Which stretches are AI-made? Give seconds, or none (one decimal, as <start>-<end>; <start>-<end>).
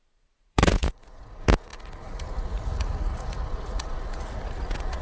0.0-5.0